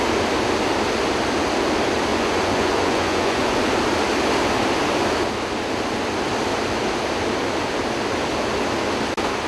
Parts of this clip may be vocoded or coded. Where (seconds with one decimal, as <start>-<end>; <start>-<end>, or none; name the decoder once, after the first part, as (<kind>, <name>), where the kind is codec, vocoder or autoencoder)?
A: 2.1-3.6 (vocoder, Vocos)